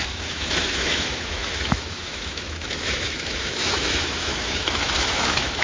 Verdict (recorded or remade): remade